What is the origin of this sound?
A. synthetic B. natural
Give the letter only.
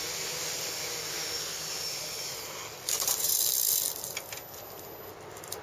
B